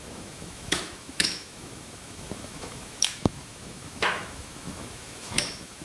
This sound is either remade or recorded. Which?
remade